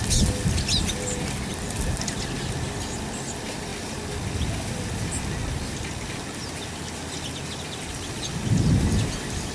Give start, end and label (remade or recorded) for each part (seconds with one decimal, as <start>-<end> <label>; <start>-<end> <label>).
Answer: 0.0-9.5 recorded